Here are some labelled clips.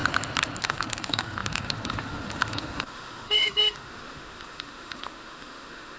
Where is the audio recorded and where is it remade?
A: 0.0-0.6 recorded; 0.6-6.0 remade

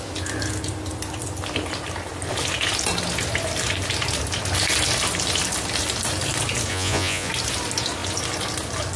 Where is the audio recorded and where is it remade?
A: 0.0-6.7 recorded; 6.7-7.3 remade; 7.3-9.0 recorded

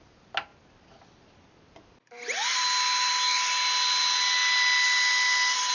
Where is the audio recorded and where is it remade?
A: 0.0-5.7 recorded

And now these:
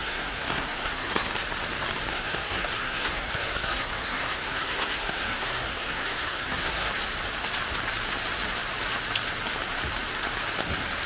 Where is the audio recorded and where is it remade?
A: 0.0-1.3 remade; 1.3-2.1 recorded; 2.1-6.9 remade; 6.9-11.1 recorded

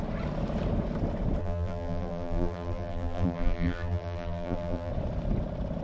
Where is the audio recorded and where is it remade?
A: 0.0-1.4 recorded; 1.4-4.9 remade; 4.9-5.8 recorded